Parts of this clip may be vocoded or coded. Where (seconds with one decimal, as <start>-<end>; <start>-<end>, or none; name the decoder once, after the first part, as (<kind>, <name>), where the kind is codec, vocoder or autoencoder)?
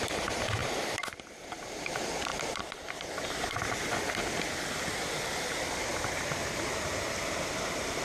none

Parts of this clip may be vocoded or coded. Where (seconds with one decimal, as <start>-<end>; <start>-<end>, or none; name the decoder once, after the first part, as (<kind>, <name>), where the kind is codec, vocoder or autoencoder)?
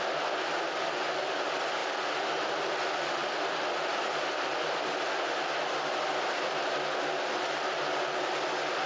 3.2-5.2 (vocoder, BigVGAN v2)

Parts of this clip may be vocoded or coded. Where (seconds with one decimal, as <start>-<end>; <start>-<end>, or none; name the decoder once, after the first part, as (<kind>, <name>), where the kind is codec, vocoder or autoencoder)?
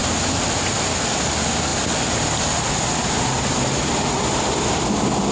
none